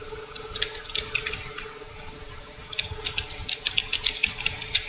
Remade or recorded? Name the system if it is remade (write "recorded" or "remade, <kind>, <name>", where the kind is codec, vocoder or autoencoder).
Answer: recorded